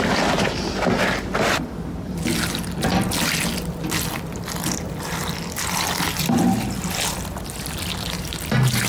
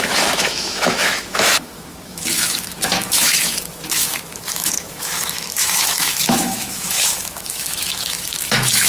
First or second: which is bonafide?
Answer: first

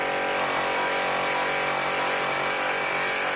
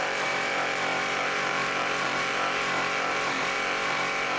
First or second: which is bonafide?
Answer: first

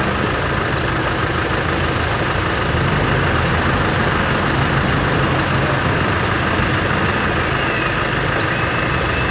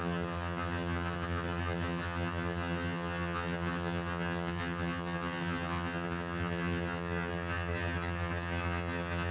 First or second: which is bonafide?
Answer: first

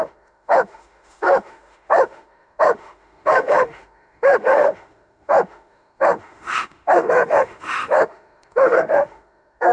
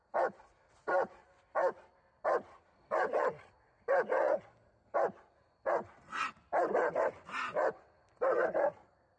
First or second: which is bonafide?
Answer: second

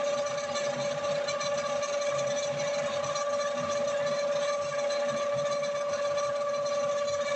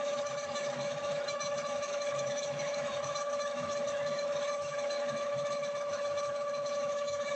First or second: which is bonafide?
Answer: first